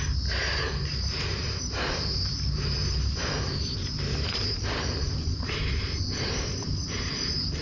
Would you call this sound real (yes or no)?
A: no